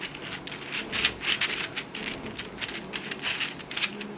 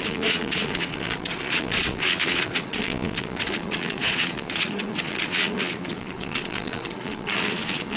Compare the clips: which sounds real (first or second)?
first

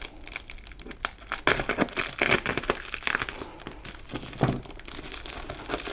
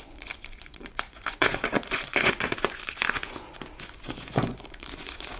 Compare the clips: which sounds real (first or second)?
first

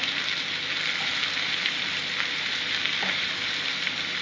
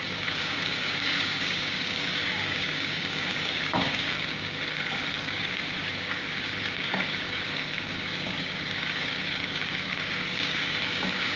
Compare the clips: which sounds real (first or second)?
first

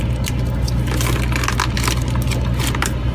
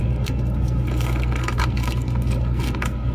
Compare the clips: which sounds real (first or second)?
first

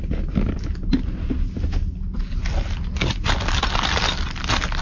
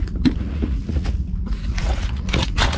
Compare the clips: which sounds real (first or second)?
first